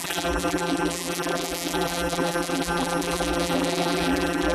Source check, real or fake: fake